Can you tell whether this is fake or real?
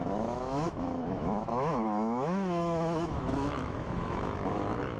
fake